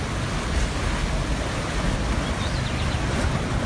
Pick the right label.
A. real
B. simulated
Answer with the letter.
A